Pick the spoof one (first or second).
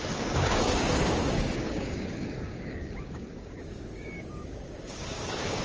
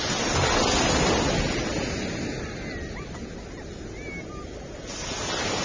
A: first